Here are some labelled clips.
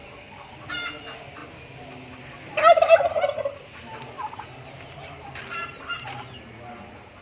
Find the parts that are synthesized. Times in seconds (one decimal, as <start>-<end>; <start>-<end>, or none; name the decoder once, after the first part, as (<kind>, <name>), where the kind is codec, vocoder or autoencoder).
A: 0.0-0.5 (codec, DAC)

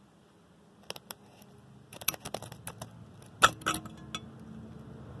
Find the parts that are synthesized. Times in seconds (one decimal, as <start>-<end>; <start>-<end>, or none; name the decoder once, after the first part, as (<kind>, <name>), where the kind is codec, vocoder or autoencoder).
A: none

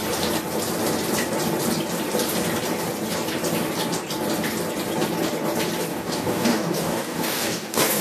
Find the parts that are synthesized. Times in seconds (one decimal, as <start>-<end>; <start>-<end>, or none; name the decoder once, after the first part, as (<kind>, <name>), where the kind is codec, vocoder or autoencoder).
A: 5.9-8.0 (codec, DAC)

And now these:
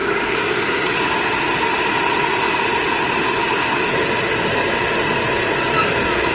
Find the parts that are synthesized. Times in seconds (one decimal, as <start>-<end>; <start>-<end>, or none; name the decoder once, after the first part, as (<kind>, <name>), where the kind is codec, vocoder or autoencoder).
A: 0.0-0.6 (codec, DAC)